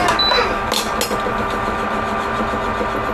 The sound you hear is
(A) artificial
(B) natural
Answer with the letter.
B